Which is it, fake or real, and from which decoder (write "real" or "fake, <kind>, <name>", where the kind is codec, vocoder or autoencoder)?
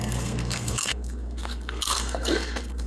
fake, codec, SNAC